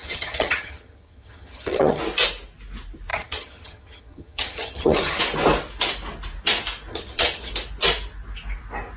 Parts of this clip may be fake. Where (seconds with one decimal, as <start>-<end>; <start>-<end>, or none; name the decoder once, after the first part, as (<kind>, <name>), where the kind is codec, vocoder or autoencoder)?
0.0-2.0 (vocoder, HiFi-GAN); 3.1-5.2; 6.9-7.5